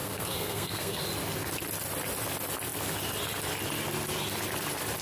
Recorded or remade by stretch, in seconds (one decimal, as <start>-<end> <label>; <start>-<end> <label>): 0.0-1.0 remade; 1.0-5.0 recorded

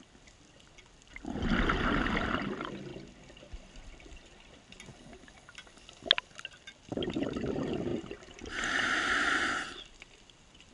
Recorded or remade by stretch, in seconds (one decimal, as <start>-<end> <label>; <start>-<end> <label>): 0.0-10.7 recorded

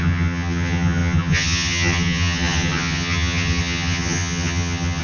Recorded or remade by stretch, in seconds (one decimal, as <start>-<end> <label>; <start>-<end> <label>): 0.0-5.0 remade

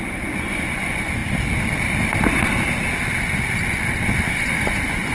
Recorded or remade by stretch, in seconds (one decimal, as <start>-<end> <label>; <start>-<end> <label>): 0.0-1.2 remade; 1.2-4.3 recorded; 4.3-5.1 remade

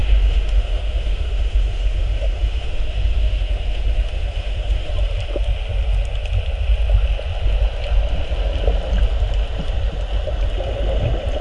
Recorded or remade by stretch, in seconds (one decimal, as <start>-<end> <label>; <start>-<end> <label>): 0.0-4.9 remade; 4.9-11.4 recorded

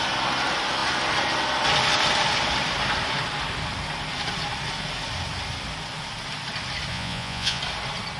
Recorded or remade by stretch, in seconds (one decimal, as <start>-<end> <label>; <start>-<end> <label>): 0.0-6.9 recorded; 6.9-7.6 remade; 7.6-8.2 recorded

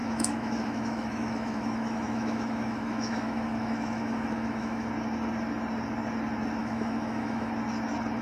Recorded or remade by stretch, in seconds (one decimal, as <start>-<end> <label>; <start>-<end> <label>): 0.0-4.9 remade; 4.9-6.6 recorded; 6.6-7.5 remade; 7.5-8.2 recorded